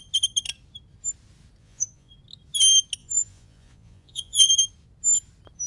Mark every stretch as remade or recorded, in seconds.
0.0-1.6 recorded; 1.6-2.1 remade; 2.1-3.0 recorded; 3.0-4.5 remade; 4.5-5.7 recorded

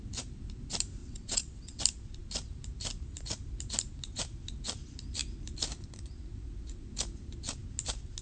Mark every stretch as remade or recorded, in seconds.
0.0-1.0 recorded; 1.0-1.8 remade; 1.8-8.2 recorded

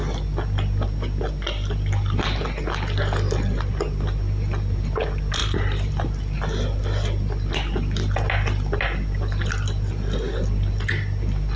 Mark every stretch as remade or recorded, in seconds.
0.0-5.4 recorded; 5.4-5.9 remade; 5.9-11.6 recorded

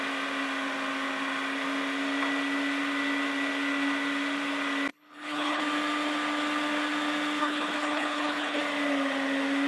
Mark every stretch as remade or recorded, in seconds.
0.0-4.9 recorded; 4.9-5.6 remade; 5.6-7.4 recorded; 7.4-8.6 remade; 8.6-9.7 recorded

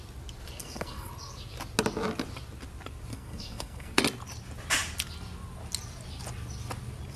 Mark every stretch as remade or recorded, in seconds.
0.0-0.6 recorded; 0.6-1.1 remade; 1.1-3.1 recorded; 3.1-4.0 remade; 4.0-7.2 recorded

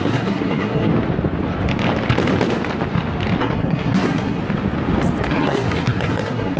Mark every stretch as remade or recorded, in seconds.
0.0-0.9 remade; 0.9-3.4 recorded; 3.4-4.4 remade; 4.4-5.3 recorded; 5.3-6.6 remade